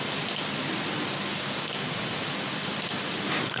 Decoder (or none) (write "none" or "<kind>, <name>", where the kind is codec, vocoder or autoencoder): none